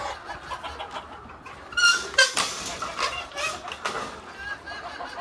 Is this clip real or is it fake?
real